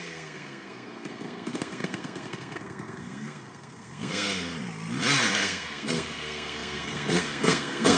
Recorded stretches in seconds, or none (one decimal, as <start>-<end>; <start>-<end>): 4.5-5.3